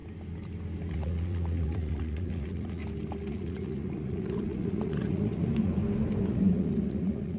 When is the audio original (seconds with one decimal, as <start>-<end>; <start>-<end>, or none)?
0.0-0.9; 2.8-3.3; 5.8-6.3